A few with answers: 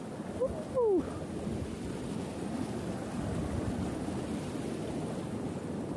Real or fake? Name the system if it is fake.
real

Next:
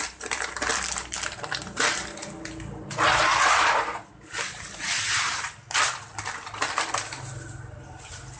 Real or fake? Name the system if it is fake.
real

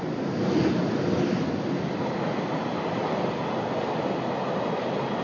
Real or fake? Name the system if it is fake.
real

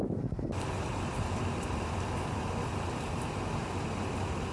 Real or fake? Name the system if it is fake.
real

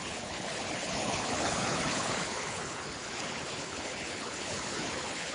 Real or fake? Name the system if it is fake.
fake, codec, HILCodec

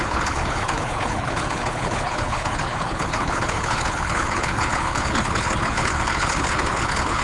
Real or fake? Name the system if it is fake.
fake, codec, HILCodec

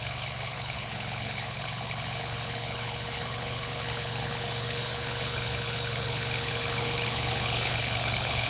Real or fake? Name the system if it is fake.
fake, codec, HILCodec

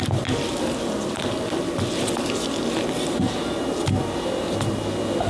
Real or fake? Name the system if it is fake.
real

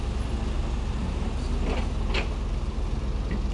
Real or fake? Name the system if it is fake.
real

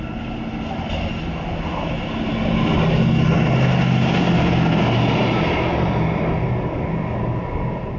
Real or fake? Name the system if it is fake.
real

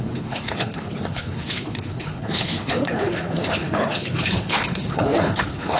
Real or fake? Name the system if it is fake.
fake, codec, HILCodec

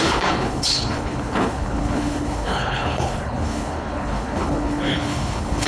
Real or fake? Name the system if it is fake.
fake, codec, HILCodec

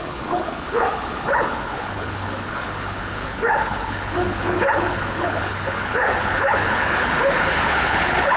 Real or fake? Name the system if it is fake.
fake, codec, HILCodec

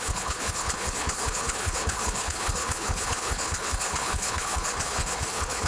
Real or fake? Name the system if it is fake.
fake, codec, HILCodec